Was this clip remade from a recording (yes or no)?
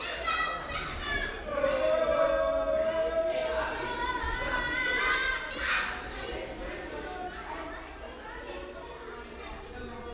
no